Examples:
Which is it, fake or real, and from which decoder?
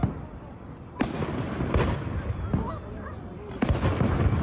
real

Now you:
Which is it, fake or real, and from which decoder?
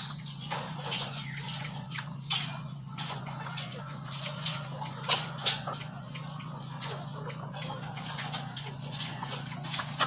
fake, vocoder, Vocos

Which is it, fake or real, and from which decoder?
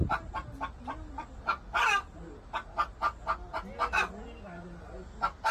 real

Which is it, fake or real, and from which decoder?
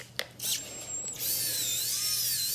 real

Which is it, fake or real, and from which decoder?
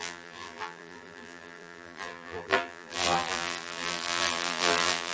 fake, vocoder, BigVGAN v2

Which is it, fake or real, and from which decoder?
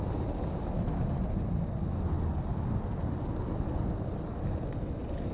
real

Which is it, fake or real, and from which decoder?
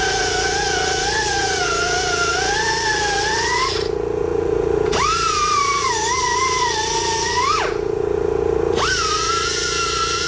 fake, vocoder, Vocos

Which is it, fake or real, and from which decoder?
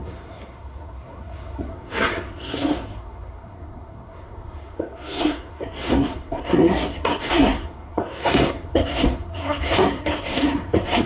fake, codec, SNAC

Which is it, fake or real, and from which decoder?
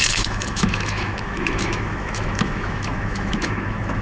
fake, autoencoder, DAC-VAE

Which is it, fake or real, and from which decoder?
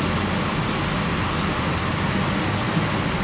real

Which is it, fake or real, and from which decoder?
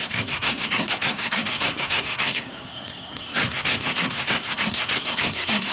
fake, codec, SNAC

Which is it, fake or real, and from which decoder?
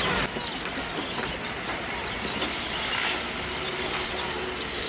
real